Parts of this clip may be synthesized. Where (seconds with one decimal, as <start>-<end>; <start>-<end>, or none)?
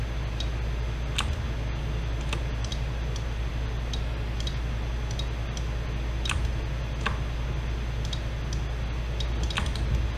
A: none